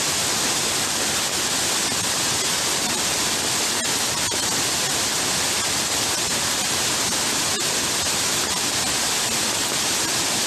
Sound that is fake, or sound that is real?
real